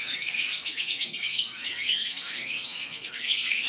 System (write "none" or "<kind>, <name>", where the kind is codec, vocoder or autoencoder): codec, SNAC